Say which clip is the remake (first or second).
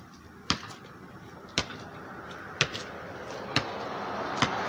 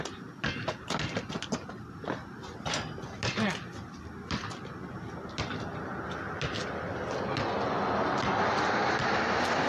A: first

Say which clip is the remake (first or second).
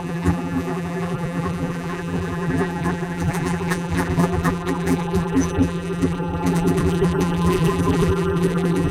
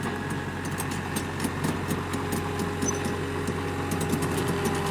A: first